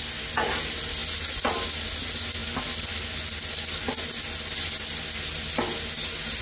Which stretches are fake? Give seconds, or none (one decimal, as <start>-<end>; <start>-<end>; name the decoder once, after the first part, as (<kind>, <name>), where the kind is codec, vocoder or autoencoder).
none